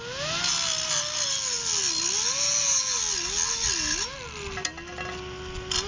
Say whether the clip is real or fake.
real